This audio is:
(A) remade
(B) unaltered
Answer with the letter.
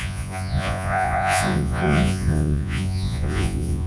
A